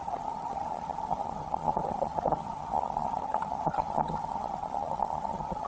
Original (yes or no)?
no